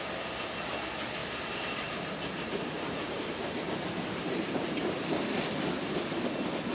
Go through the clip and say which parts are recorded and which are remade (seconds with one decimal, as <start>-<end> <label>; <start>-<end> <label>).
0.0-1.2 recorded; 1.2-5.2 remade; 5.2-6.7 recorded